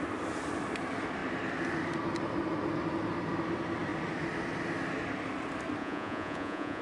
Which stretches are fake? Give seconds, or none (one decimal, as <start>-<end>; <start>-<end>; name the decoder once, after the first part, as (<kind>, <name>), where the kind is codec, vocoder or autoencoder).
5.8-6.8 (vocoder, Vocos)